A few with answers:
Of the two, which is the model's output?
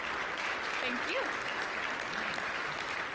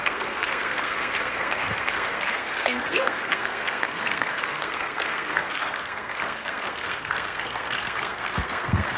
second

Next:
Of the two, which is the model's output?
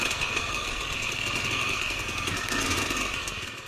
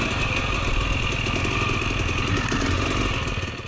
first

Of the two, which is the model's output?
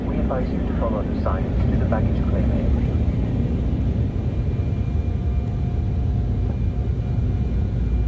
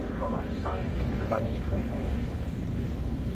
second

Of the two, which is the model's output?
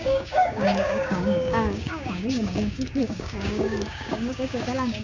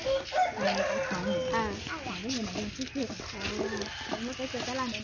first